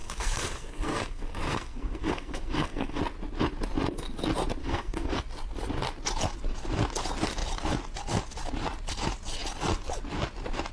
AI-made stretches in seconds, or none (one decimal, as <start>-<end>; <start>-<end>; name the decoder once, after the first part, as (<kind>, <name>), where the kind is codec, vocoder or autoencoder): 0.0-3.0 (codec, SNAC); 4.6-5.2